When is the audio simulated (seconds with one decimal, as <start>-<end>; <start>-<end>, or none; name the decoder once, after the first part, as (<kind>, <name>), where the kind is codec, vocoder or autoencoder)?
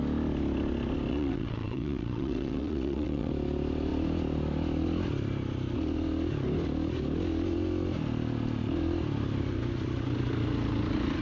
1.1-3.3 (vocoder, WaveNeXt)